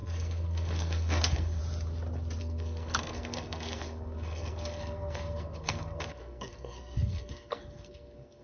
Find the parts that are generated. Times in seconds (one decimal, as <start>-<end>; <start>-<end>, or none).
0.0-1.6; 2.4-8.4